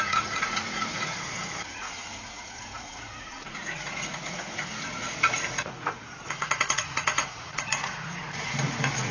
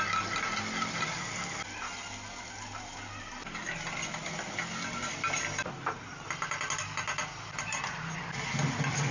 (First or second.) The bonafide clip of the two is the second